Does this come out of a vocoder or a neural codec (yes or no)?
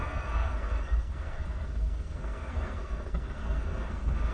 yes